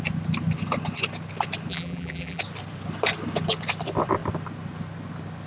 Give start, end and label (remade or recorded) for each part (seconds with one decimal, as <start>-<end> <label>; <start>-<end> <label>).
0.0-1.7 recorded; 1.7-2.4 remade; 2.4-5.5 recorded